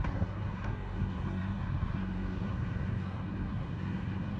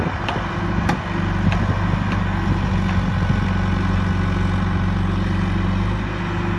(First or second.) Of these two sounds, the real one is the second